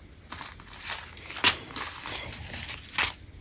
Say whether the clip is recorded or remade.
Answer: recorded